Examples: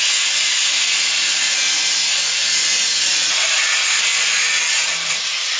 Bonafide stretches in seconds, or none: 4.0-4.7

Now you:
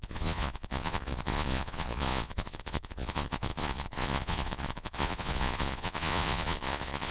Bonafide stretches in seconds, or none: none

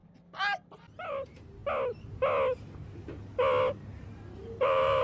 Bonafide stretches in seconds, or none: 0.0-1.1; 1.6-4.6

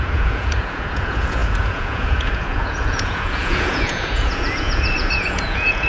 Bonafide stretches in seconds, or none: none

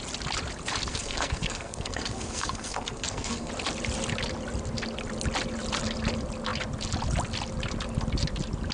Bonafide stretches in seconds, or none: 0.0-0.9; 3.5-8.7